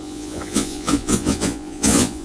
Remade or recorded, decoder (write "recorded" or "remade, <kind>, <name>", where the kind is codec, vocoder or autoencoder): remade, vocoder, Vocos